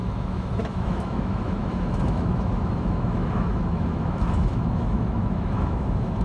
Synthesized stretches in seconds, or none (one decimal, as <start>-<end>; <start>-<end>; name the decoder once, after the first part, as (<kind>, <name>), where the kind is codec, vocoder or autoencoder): 0.0-6.2 (autoencoder, DAC-VAE)